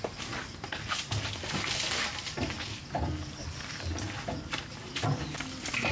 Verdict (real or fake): real